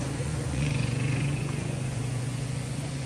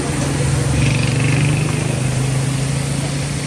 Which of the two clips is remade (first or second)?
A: first